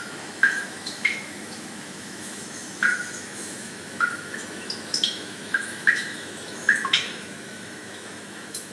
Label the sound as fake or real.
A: fake